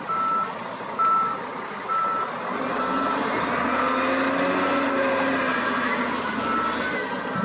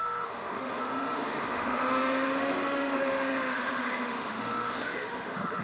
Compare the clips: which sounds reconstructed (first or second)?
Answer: second